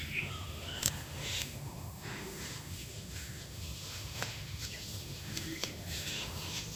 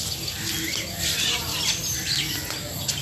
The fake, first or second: first